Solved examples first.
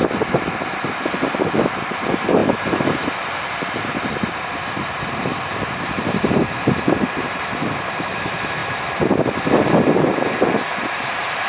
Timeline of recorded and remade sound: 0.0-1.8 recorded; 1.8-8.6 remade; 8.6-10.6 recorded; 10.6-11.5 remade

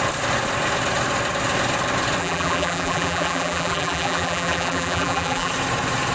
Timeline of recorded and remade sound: 0.0-2.2 recorded; 2.2-5.5 remade; 5.5-6.1 recorded

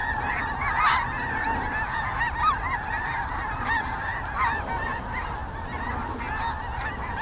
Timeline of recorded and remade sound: 0.0-7.2 recorded

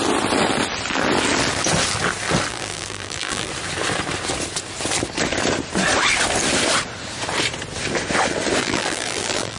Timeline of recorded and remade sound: 0.0-2.5 recorded; 2.5-3.5 remade; 3.5-8.6 recorded; 8.6-9.6 remade

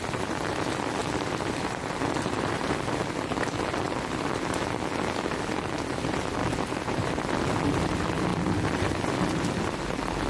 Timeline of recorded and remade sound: 0.0-1.0 recorded; 1.0-2.6 remade; 2.6-6.4 recorded; 6.4-7.1 remade; 7.1-10.3 recorded

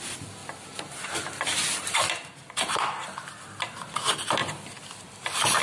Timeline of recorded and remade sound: 0.0-4.4 recorded; 4.4-5.6 remade

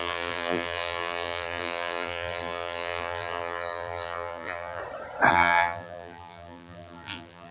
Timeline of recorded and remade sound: 0.0-4.8 remade; 4.8-5.3 recorded; 5.3-7.5 remade

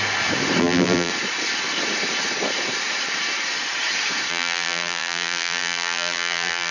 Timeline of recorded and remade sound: 0.0-0.6 recorded; 0.6-1.1 remade; 1.1-4.3 recorded; 4.3-6.7 remade